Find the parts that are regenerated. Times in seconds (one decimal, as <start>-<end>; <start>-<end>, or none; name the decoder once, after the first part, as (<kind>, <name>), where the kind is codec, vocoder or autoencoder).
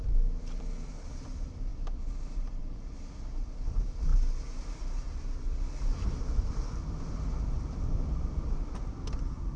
0.0-4.1 (vocoder, BigVGAN v2); 4.8-9.6